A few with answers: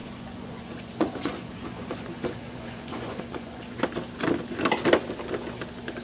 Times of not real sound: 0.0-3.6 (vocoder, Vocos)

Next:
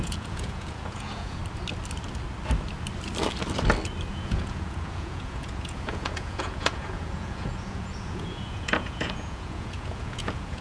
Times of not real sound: 0.0-1.4 (vocoder, Vocos); 4.1-10.6